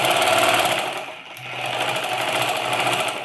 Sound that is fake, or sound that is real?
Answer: real